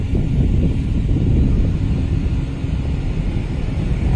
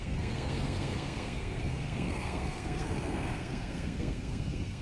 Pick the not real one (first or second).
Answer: second